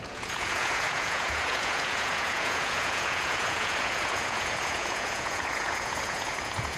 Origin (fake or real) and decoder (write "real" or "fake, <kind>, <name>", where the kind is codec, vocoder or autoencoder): fake, vocoder, Vocos